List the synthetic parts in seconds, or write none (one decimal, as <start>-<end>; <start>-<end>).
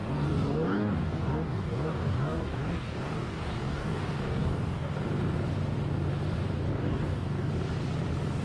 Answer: 0.0-4.9; 6.7-7.5